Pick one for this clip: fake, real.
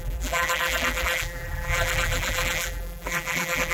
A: fake